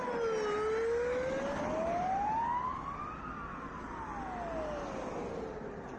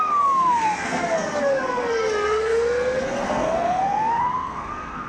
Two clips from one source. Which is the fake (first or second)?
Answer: second